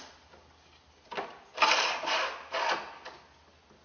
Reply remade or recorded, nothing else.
recorded